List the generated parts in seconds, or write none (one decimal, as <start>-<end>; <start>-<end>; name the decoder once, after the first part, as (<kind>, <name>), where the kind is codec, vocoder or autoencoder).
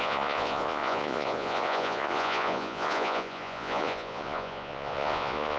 0.0-5.6 (vocoder, Vocos)